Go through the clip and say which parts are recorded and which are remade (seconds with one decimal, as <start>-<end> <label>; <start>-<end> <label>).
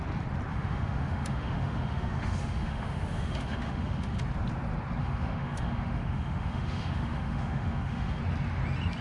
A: 0.0-0.5 recorded; 0.5-4.2 remade; 4.2-5.0 recorded; 5.0-8.2 remade; 8.2-9.0 recorded